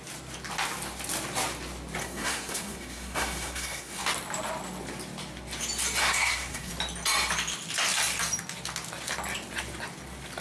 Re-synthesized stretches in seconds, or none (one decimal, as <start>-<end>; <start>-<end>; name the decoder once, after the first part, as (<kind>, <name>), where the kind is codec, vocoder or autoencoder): 2.0-4.0 (codec, SNAC); 6.0-6.7